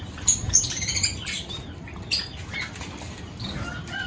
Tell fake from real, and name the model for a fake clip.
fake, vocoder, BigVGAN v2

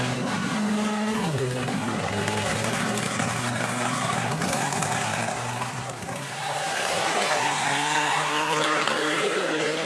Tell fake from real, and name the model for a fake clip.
fake, codec, SNAC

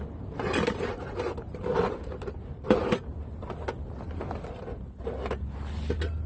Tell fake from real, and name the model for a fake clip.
real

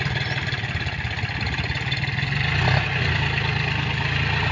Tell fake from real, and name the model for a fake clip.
real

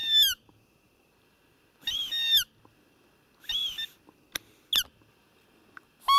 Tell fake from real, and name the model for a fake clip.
real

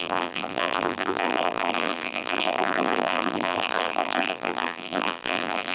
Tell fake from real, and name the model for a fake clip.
fake, vocoder, BigVGAN v2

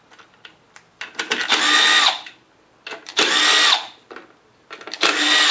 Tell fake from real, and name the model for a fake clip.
real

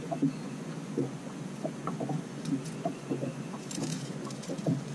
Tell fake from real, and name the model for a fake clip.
fake, vocoder, Vocos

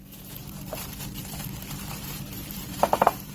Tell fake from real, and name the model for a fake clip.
fake, vocoder, BigVGAN v2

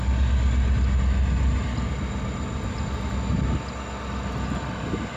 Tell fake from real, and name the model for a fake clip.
real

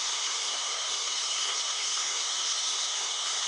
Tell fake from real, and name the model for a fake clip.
fake, codec, SNAC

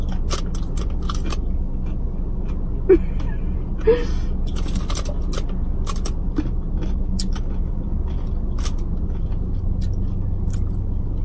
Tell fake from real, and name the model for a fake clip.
real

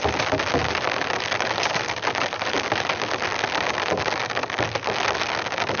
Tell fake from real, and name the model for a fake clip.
real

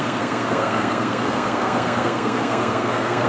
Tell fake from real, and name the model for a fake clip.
fake, codec, SNAC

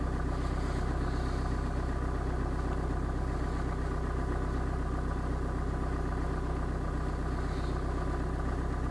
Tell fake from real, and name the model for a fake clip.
real